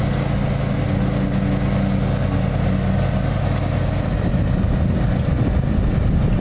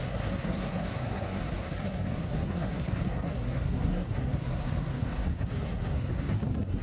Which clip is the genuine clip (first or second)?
first